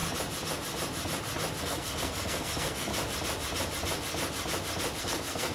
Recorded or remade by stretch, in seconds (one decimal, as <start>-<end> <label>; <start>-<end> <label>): 0.0-1.6 recorded; 1.6-2.9 remade; 2.9-5.0 recorded; 5.0-5.5 remade